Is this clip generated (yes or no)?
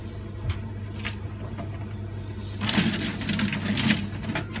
no